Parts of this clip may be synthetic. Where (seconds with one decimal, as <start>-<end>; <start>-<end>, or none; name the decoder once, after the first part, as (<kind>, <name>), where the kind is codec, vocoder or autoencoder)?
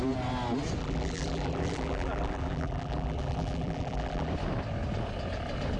0.8-4.3 (vocoder, BigVGAN v2)